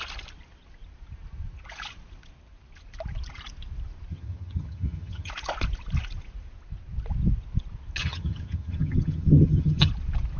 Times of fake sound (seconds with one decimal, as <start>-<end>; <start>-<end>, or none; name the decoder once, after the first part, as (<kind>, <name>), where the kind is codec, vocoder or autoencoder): 4.1-5.3 (vocoder, HiFi-GAN); 8.0-9.9

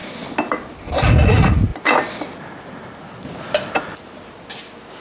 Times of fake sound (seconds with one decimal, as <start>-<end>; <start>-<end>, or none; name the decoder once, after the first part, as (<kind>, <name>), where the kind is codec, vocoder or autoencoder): none

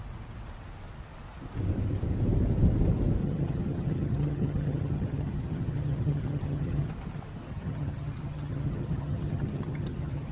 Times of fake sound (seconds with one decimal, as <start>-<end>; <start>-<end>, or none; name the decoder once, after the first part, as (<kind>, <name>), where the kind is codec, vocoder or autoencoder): 3.2-6.9 (vocoder, HiFi-GAN); 7.5-10.3